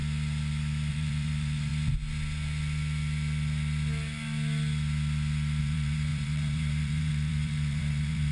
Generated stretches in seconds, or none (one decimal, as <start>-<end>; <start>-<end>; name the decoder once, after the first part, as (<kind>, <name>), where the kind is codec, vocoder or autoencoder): 0.9-1.7 (vocoder, BigVGAN v2); 5.6-8.3